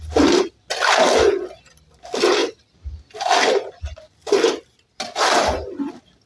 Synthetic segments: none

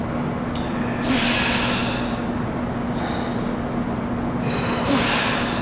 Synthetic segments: none

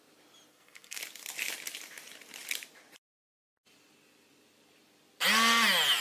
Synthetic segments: 0.5-1.0

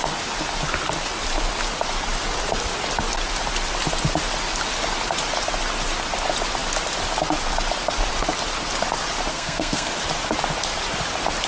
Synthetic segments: 9.3-9.9

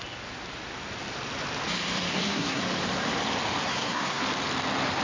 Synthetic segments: 2.1-2.6; 3.6-4.2